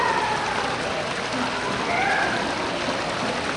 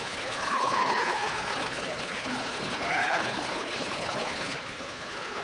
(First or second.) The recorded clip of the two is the first